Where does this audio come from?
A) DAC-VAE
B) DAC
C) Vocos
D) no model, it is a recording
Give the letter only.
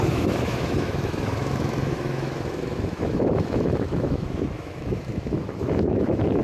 A